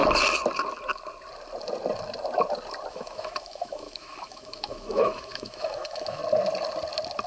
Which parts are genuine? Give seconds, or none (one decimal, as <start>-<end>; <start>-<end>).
0.0-2.9; 6.2-7.3